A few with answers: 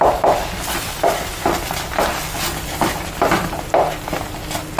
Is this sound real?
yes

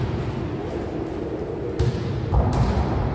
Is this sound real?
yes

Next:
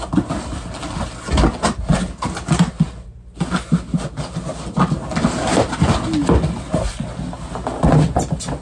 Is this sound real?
yes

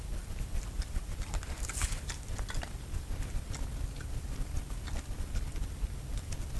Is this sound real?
yes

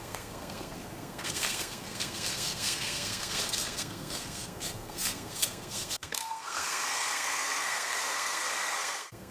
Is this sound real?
no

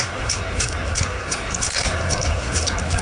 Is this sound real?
no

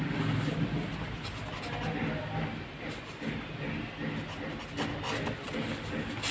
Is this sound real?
yes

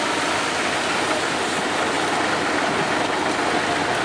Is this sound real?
yes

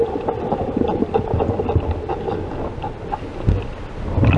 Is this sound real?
yes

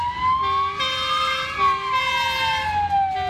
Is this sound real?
yes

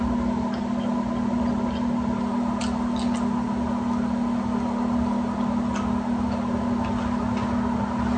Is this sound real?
yes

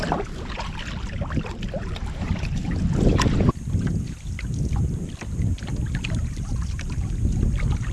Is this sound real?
yes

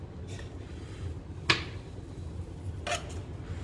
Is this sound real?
yes